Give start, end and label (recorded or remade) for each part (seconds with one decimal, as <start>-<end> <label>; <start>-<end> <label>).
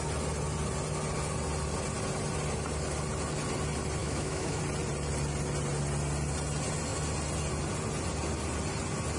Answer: 0.0-4.0 recorded; 4.0-4.6 remade; 4.6-9.2 recorded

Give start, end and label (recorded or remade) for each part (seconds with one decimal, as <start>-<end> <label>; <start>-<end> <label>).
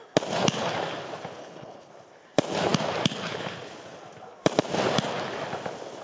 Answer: 0.0-1.4 recorded; 1.4-1.9 remade; 1.9-6.0 recorded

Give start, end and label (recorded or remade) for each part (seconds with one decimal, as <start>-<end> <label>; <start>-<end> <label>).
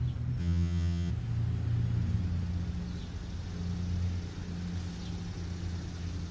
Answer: 0.0-0.4 recorded; 0.4-1.1 remade; 1.1-6.3 recorded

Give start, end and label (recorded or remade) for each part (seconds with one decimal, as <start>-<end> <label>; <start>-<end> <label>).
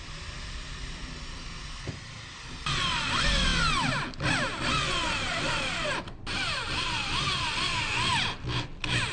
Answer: 0.0-9.1 recorded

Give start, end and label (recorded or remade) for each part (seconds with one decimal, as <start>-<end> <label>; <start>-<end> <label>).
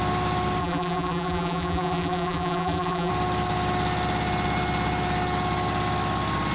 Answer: 0.0-0.6 recorded; 0.6-3.1 remade; 3.1-6.5 recorded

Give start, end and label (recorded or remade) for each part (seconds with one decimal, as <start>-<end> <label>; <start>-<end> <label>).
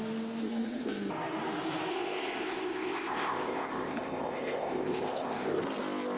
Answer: 0.0-0.4 recorded; 0.4-1.1 remade; 1.1-1.9 recorded; 1.9-5.6 remade; 5.6-6.2 recorded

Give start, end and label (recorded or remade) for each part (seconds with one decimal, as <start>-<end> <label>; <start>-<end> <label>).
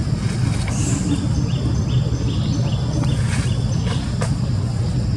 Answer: 0.0-5.2 recorded